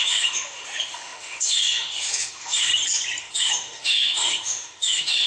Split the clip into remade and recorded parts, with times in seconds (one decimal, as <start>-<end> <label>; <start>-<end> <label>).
0.0-2.7 remade; 2.7-3.2 recorded; 3.2-5.3 remade